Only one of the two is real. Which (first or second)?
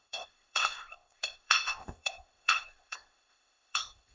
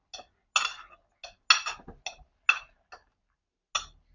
second